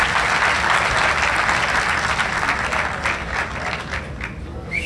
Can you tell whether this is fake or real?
real